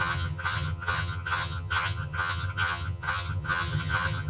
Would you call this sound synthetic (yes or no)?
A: yes